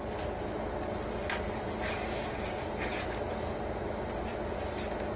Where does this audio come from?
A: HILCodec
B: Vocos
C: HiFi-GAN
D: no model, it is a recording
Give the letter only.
D